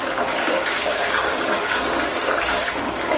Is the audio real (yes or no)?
no